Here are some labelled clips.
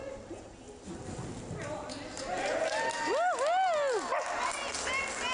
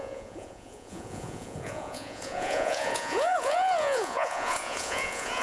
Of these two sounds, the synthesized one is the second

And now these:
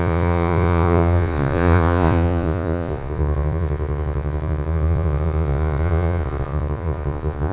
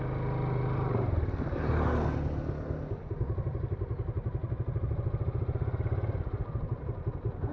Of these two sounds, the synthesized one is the first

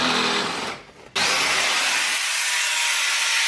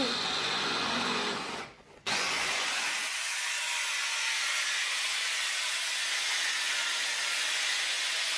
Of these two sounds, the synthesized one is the second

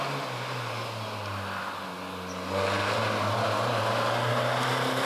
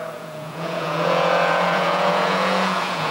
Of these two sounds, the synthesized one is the second